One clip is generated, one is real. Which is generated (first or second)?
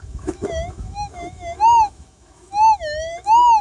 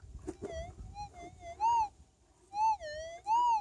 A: first